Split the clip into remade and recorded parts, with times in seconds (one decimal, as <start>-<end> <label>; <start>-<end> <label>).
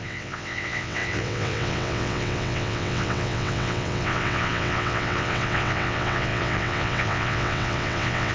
0.0-8.3 remade